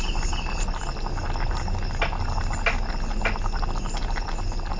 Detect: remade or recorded recorded